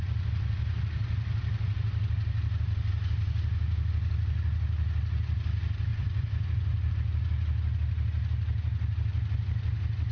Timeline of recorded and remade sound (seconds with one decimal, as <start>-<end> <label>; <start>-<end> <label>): 0.0-5.9 recorded; 5.9-6.9 remade; 6.9-10.1 recorded

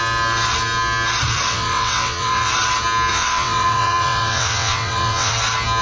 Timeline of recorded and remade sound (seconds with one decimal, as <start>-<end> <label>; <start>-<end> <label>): 0.0-1.5 recorded; 1.5-2.5 remade; 2.5-3.1 recorded; 3.1-5.3 remade; 5.3-5.8 recorded

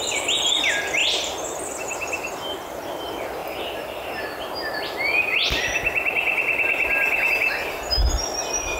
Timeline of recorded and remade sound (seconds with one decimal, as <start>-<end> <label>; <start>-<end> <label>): 0.0-1.0 recorded; 1.0-2.8 remade; 2.8-8.8 recorded